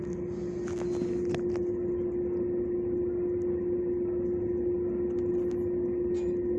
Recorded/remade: recorded